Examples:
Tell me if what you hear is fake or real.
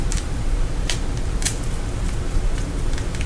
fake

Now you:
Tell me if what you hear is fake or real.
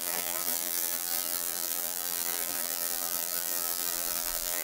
fake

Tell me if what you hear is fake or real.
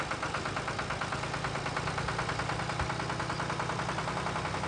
real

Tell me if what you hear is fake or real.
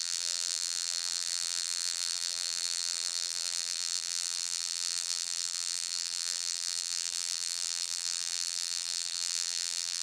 fake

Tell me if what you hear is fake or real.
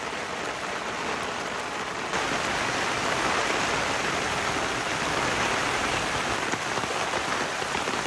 real